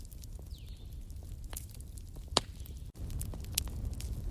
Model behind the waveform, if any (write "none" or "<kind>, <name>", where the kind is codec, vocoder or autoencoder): none